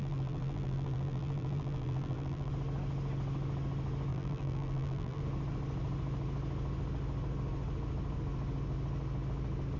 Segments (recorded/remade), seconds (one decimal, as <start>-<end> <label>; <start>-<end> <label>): 0.0-2.5 remade; 2.5-4.1 recorded; 4.1-5.2 remade; 5.2-9.8 recorded